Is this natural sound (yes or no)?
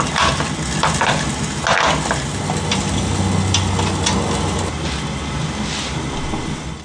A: yes